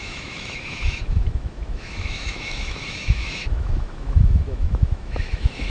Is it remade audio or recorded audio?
remade